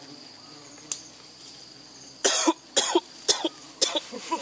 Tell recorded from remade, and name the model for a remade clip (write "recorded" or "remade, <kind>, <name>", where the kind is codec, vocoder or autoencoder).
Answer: recorded